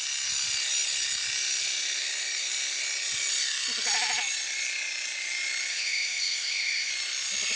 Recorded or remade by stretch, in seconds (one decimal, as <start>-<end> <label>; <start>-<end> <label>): 0.0-5.7 recorded; 5.7-6.9 remade; 6.9-7.6 recorded